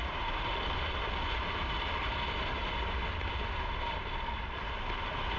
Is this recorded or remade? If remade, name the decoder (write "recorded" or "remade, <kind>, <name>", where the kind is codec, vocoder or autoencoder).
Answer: recorded